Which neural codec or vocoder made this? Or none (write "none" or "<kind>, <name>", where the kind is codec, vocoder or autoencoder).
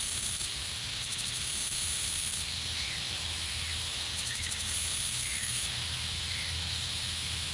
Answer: autoencoder, DAC-VAE